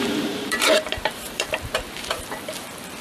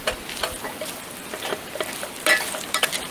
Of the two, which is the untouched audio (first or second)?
second